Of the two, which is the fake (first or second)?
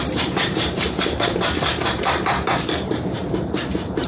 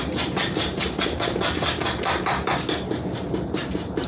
first